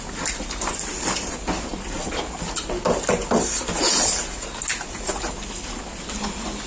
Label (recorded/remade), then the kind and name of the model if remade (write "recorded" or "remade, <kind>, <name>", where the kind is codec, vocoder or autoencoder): recorded